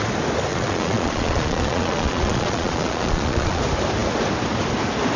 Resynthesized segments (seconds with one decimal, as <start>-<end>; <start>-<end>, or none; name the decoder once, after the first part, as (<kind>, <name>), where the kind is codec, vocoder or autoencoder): 0.5-3.6 (vocoder, Vocos)